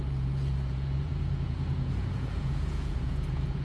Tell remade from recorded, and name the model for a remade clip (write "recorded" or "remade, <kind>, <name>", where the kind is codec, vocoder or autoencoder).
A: remade, vocoder, Vocos